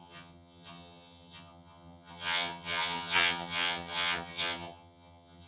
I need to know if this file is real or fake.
fake